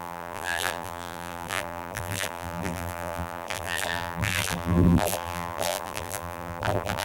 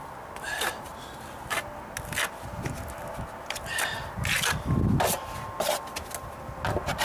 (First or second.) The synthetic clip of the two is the first